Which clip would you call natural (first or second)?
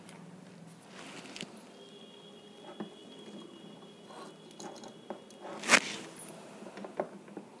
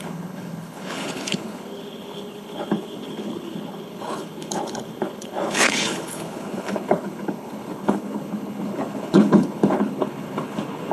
first